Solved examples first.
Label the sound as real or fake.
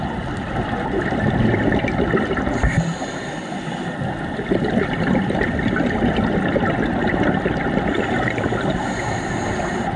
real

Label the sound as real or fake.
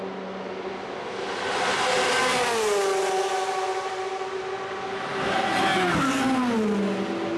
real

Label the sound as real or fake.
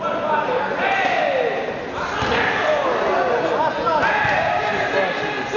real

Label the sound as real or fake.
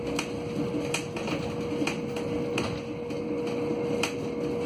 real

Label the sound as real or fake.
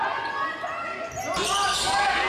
real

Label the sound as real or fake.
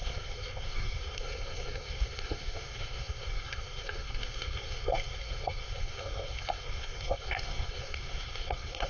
fake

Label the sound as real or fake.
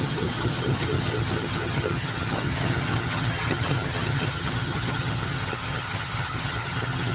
fake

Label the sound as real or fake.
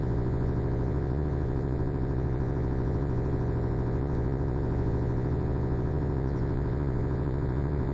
fake